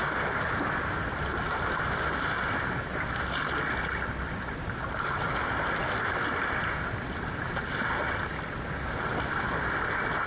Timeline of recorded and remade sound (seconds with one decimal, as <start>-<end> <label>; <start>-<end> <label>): 0.0-10.3 recorded